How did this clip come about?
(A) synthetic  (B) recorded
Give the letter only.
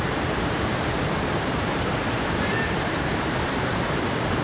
A